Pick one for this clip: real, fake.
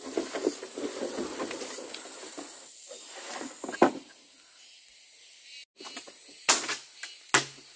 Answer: real